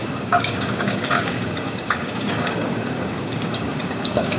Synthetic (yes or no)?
yes